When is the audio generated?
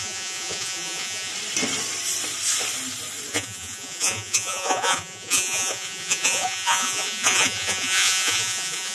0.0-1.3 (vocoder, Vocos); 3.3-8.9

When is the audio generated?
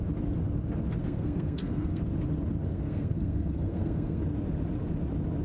1.0-2.0 (codec, SNAC); 2.7-4.2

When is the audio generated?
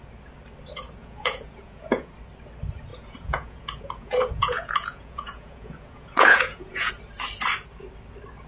1.0-2.1 (vocoder, Vocos); 2.9-6.9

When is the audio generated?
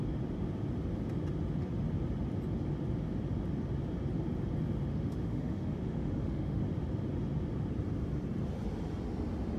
4.9-6.6 (autoencoder, DAC-VAE)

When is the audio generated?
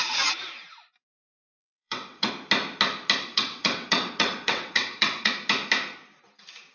1.6-2.3 (vocoder, WaveNeXt); 3.3-5.3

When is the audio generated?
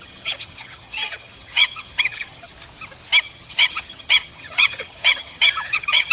0.0-2.5 (vocoder, HiFi-GAN); 3.2-6.1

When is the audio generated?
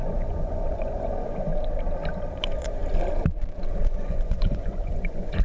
0.0-1.5 (vocoder, Vocos); 2.4-2.8; 3.8-5.4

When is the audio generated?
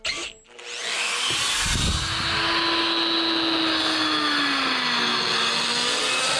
none